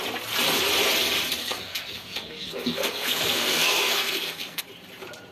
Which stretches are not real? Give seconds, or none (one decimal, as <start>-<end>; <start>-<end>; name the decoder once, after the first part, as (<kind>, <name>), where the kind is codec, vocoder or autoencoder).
1.4-4.6 (codec, SNAC)